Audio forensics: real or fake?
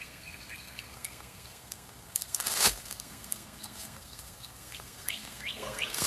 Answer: fake